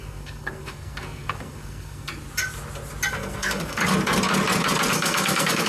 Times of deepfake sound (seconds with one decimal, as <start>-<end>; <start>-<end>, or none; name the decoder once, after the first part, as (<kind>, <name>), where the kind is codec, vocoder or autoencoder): 0.0-2.1 (codec, SNAC); 3.1-3.8; 4.9-5.7

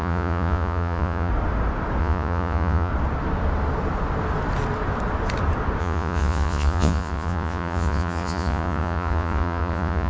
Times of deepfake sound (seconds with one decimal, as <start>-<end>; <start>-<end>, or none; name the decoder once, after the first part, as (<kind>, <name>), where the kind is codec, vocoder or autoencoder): 0.0-1.3 (vocoder, Vocos); 2.0-2.9; 5.8-10.1

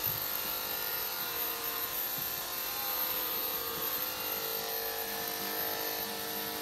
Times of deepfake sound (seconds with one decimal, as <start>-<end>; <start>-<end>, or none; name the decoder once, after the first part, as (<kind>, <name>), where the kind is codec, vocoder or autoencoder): 0.9-4.0 (vocoder, BigVGAN v2)

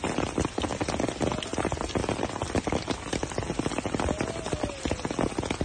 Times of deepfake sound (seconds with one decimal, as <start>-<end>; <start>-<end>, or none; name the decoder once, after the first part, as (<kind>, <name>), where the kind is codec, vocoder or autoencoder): none

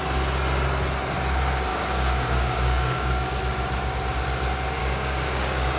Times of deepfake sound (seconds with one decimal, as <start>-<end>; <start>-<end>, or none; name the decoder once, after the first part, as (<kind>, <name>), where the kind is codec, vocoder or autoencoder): 1.7-3.4 (codec, DAC); 4.8-5.8

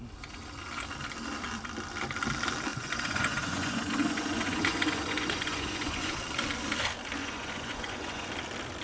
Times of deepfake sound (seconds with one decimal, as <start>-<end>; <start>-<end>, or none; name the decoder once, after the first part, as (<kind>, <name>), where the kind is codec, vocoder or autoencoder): 2.7-6.2 (vocoder, Vocos); 7.2-8.3

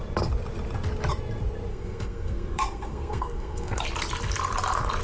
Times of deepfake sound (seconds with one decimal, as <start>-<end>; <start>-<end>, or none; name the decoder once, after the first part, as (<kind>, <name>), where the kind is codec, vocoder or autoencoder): 1.7-3.8 (codec, SNAC)

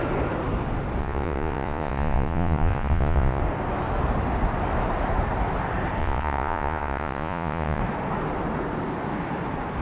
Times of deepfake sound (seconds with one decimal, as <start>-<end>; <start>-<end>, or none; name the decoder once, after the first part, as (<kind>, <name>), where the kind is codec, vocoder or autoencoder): 1.0-3.4 (vocoder, Vocos); 6.0-7.8